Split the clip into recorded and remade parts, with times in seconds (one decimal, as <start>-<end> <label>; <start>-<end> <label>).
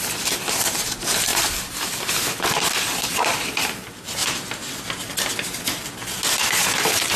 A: 0.0-7.2 recorded